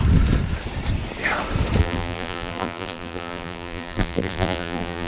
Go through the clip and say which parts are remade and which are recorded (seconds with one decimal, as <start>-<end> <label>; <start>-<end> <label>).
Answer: 0.0-1.8 recorded; 1.8-5.1 remade